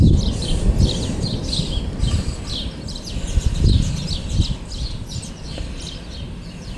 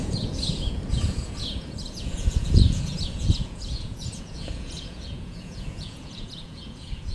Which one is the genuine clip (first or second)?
first